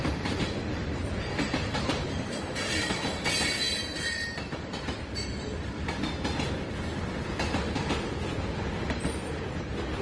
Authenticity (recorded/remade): remade